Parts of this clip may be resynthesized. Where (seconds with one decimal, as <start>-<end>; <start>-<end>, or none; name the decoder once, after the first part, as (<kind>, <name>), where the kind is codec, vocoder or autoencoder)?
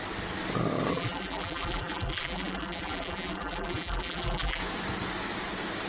0.9-4.6 (vocoder, BigVGAN v2)